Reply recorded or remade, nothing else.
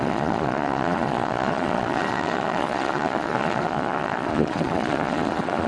remade